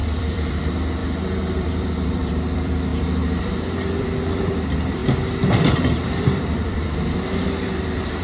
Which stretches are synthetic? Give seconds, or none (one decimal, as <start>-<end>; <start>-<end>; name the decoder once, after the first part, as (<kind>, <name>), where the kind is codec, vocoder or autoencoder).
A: 0.0-1.0 (vocoder, BigVGAN v2); 1.6-5.0; 5.8-8.2